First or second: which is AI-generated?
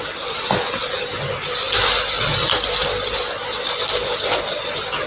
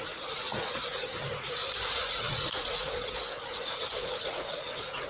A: second